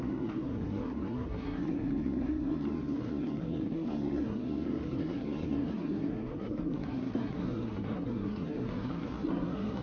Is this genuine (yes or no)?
no